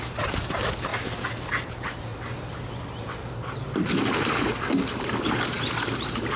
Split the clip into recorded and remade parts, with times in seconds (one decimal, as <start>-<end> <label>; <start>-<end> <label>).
0.0-0.9 remade; 0.9-1.5 recorded; 1.5-2.1 remade; 2.1-4.1 recorded; 4.1-6.4 remade